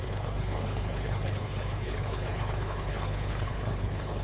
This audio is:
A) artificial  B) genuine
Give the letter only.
A